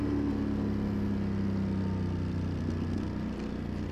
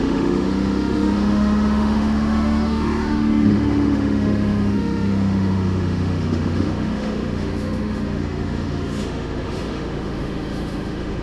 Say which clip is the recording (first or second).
first